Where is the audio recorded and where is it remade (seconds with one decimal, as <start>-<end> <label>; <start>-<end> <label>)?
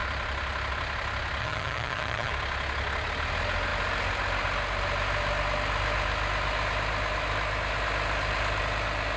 0.0-1.4 recorded; 1.4-2.3 remade; 2.3-9.2 recorded